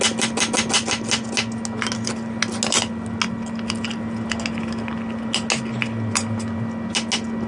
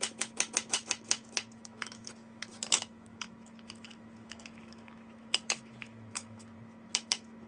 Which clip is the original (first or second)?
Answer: first